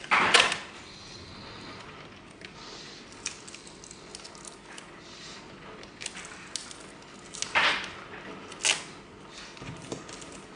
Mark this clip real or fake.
real